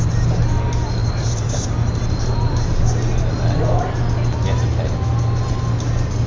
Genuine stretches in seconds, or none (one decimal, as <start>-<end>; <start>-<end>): 0.0-1.0; 1.5-6.3

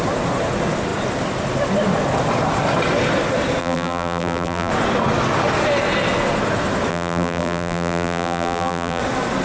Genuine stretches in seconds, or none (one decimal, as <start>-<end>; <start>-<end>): 0.0-3.6; 4.7-6.9; 9.0-9.4

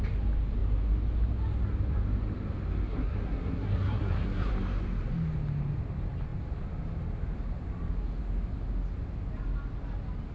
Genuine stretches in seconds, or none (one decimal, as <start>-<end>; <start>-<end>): 0.0-2.9; 4.5-10.3

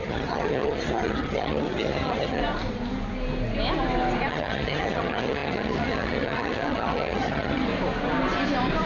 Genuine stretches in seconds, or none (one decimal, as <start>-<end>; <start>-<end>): 2.4-4.3; 7.7-8.9

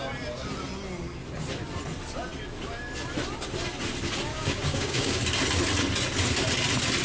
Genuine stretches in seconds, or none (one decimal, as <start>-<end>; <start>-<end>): 0.0-4.3; 5.2-7.0

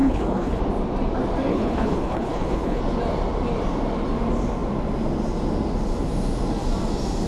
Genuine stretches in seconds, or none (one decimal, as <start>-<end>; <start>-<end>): 0.6-1.5; 2.8-7.3

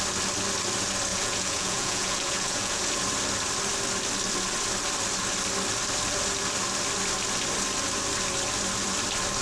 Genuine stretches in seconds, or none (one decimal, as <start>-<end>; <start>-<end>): 0.0-1.1; 2.8-9.4

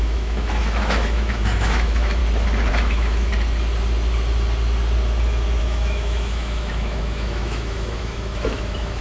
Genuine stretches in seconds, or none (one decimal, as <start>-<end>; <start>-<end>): 2.2-2.7; 3.3-5.6